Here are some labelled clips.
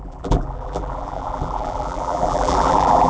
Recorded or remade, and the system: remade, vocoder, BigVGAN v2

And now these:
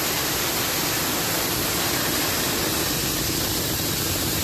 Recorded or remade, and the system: recorded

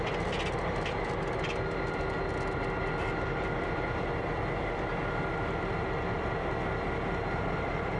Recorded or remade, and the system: recorded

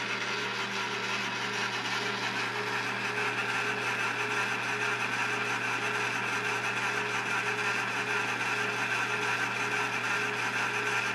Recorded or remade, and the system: recorded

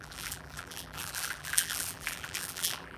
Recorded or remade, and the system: remade, vocoder, BigVGAN v2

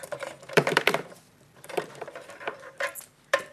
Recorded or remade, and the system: remade, vocoder, BigVGAN v2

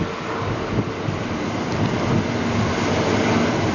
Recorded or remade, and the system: recorded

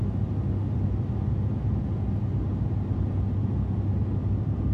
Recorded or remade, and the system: recorded